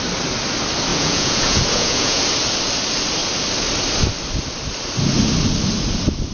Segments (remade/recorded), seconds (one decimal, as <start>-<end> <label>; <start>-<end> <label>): 0.0-0.9 recorded; 0.9-2.2 remade; 2.2-6.3 recorded

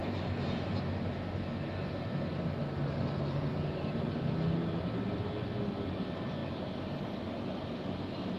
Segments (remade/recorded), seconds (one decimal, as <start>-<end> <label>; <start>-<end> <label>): 0.0-8.4 recorded

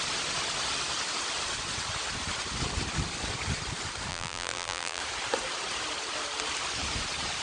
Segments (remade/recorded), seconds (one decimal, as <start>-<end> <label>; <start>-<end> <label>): 0.0-4.1 recorded; 4.1-5.0 remade; 5.0-7.4 recorded

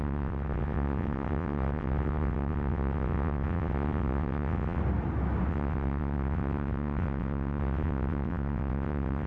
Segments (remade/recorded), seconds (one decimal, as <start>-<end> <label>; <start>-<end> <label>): 0.0-4.8 remade; 4.8-5.5 recorded; 5.5-9.3 remade

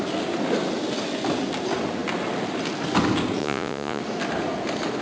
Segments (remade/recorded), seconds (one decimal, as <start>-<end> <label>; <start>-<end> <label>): 0.0-3.4 recorded; 3.4-4.0 remade; 4.0-5.0 recorded